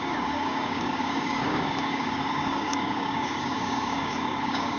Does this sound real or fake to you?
fake